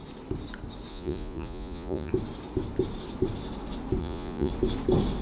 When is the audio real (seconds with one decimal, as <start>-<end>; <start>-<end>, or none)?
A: 0.0-0.9; 2.1-4.0; 4.5-5.2